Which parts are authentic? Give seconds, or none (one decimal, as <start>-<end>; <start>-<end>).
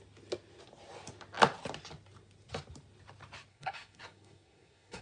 0.0-3.5